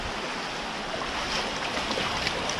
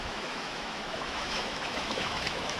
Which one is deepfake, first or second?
second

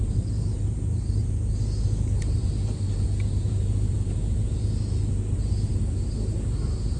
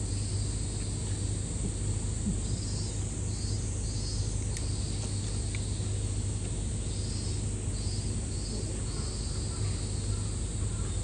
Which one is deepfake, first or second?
first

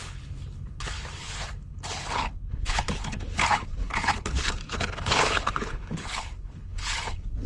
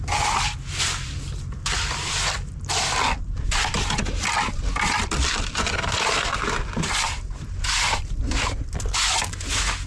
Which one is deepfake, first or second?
first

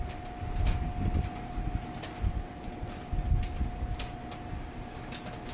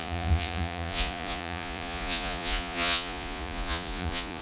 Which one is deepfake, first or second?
second